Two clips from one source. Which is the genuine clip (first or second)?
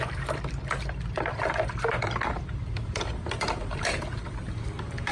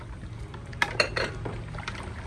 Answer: second